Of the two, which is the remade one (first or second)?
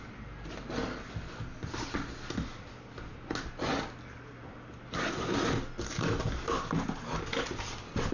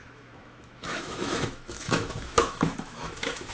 second